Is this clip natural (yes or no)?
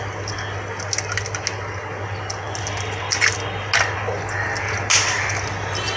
yes